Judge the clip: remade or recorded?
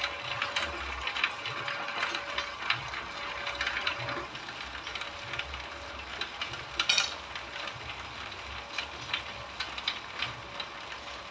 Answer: recorded